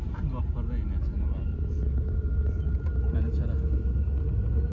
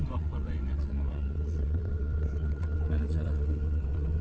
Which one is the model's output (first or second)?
second